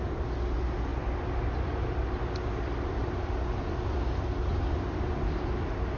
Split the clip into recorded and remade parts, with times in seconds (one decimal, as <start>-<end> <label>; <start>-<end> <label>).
0.0-6.0 recorded